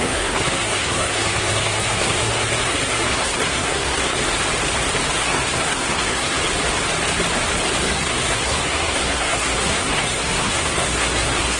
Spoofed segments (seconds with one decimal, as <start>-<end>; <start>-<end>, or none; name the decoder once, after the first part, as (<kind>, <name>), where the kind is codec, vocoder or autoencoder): 0.0-4.2 (codec, SNAC); 5.1-6.4; 7.8-11.6